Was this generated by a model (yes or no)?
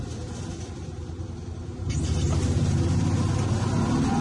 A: no